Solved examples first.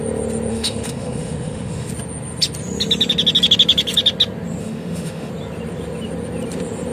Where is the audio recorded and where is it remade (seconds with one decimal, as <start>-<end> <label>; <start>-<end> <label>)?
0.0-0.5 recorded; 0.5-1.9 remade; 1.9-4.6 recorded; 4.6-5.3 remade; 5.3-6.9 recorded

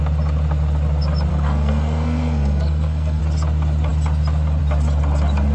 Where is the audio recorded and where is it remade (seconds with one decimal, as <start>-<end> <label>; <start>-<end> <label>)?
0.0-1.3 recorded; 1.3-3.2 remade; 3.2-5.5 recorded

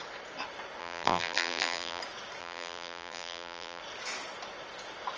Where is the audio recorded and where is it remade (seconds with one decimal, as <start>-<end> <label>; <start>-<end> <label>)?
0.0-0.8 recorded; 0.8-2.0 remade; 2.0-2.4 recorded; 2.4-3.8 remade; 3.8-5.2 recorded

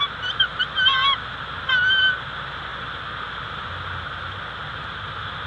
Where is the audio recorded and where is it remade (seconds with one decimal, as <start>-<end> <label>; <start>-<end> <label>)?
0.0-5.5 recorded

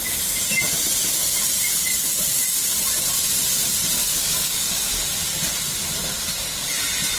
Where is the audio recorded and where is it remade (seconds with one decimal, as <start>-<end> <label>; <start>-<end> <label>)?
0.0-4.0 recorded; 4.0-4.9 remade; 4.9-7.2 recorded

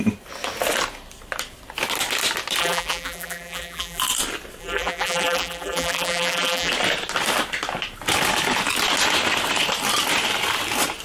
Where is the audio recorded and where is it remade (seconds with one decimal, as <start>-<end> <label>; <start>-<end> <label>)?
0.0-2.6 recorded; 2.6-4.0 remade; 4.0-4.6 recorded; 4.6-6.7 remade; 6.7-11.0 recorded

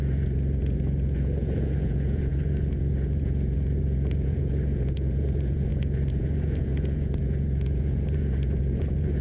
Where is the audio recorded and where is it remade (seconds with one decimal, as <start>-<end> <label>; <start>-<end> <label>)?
0.0-9.2 remade